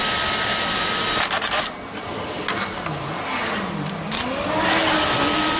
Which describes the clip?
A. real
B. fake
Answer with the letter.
A